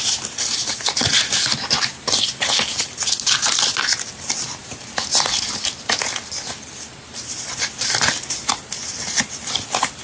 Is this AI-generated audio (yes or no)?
no